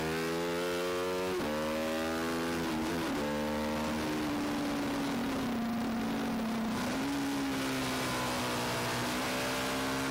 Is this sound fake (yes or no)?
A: no